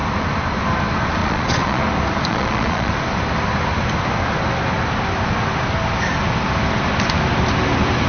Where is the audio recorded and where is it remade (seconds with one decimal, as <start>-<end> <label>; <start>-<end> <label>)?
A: 0.0-1.2 recorded; 1.2-1.8 remade; 1.8-2.3 recorded; 2.3-2.9 remade; 2.9-8.1 recorded

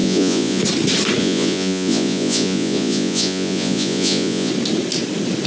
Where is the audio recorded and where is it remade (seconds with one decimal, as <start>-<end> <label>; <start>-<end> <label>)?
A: 0.0-0.6 remade; 0.6-1.2 recorded; 1.2-4.5 remade; 4.5-5.5 recorded

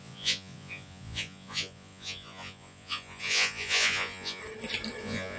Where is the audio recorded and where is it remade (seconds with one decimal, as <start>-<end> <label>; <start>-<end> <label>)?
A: 0.0-4.4 remade; 4.4-5.0 recorded; 5.0-5.4 remade

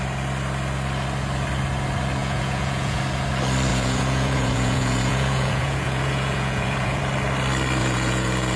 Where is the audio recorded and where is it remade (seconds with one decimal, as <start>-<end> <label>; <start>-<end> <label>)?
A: 0.0-2.2 recorded; 2.2-3.0 remade; 3.0-3.7 recorded; 3.7-7.0 remade; 7.0-7.8 recorded; 7.8-8.6 remade